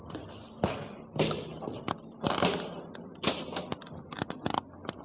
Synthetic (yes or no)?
no